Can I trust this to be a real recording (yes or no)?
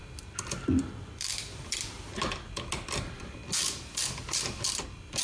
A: no